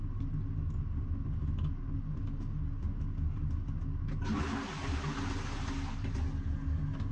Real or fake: real